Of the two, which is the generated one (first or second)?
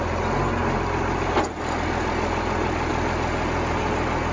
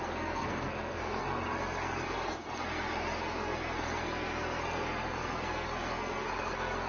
second